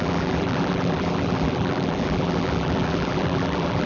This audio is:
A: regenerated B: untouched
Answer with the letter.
A